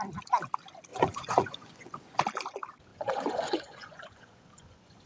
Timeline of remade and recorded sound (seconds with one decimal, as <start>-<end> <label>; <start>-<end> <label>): 0.0-0.9 recorded; 0.9-2.2 remade; 2.2-2.9 recorded; 2.9-5.1 remade